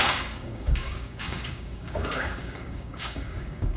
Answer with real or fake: fake